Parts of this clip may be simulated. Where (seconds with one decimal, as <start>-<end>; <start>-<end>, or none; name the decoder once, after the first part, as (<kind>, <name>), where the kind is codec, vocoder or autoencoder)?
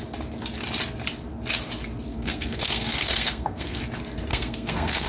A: 2.1-3.8 (codec, SNAC); 4.3-5.1